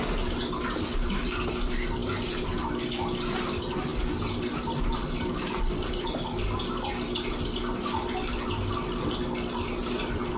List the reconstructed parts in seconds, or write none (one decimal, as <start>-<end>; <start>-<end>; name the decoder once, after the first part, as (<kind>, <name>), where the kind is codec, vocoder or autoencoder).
none